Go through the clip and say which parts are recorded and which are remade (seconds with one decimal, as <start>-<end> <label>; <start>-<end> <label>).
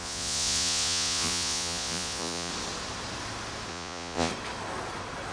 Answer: 0.0-2.5 remade; 2.5-3.7 recorded; 3.7-4.3 remade; 4.3-5.3 recorded